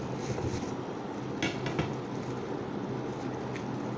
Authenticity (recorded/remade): recorded